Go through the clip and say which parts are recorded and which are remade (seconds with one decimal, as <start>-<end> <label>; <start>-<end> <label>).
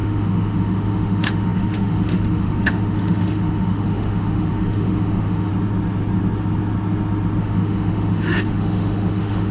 0.0-5.5 remade; 5.5-7.4 recorded; 7.4-9.5 remade